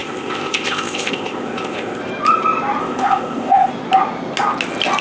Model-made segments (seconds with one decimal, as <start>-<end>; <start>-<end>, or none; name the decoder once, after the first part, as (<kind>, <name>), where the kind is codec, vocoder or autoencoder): 0.0-2.0 (codec, ZipCodec); 2.8-3.7